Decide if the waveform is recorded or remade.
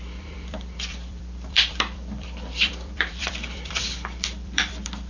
remade